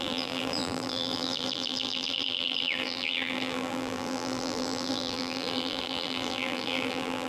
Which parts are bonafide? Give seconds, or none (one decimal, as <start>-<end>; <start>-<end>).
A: none